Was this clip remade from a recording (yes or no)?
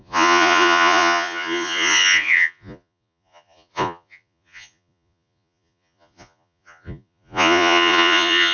yes